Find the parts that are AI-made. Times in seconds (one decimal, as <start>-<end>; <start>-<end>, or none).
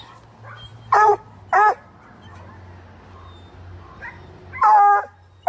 none